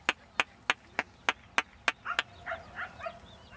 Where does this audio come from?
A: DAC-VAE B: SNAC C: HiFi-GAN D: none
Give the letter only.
D